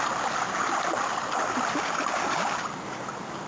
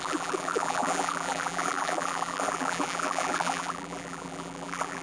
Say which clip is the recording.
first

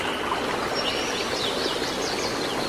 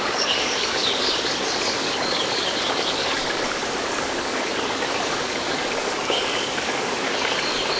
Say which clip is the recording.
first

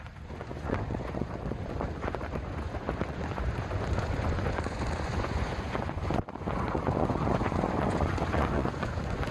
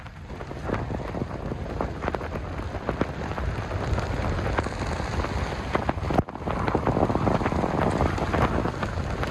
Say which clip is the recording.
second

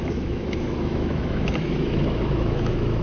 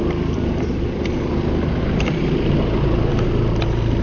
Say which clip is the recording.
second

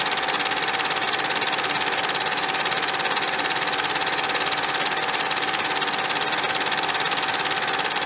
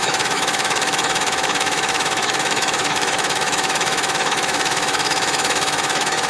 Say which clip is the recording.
first